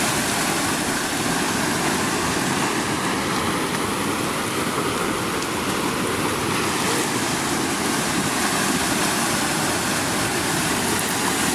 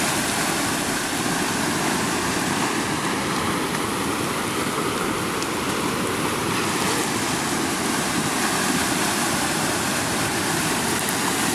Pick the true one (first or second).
first